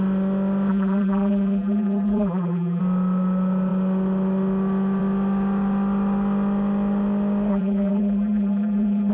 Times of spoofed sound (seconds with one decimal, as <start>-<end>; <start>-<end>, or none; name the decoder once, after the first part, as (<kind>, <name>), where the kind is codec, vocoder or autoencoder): 0.7-2.8 (vocoder, BigVGAN v2); 7.5-9.1